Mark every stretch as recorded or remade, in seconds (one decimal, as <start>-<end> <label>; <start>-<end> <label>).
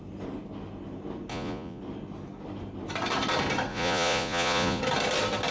0.0-1.3 recorded; 1.3-1.8 remade; 1.8-3.7 recorded; 3.7-4.8 remade; 4.8-5.5 recorded